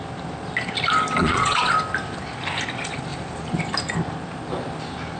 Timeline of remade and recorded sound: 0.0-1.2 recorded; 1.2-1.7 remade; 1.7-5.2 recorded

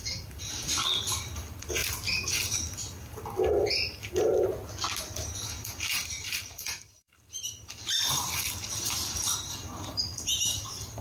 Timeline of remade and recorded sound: 0.0-1.8 remade; 1.8-2.3 recorded; 2.3-4.3 remade; 4.3-5.4 recorded; 5.4-11.0 remade